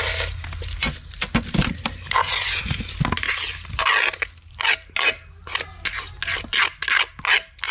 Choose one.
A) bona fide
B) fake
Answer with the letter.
A